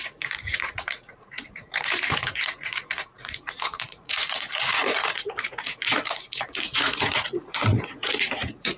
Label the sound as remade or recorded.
remade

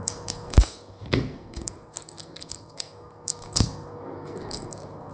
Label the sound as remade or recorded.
remade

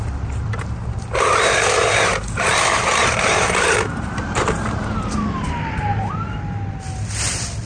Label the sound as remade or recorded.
recorded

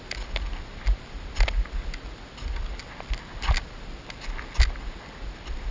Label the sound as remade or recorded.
recorded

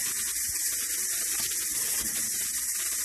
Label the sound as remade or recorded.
recorded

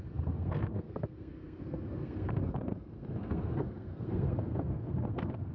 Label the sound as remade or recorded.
remade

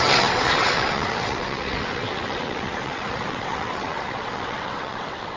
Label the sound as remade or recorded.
remade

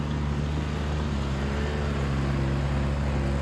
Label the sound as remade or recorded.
recorded